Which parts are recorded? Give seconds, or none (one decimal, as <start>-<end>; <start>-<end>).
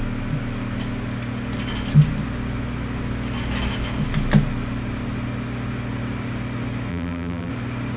0.0-6.9; 7.5-8.0